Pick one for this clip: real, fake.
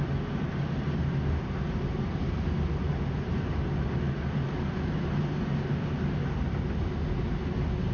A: real